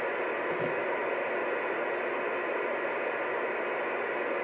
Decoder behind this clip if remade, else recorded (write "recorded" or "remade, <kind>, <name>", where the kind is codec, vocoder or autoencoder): recorded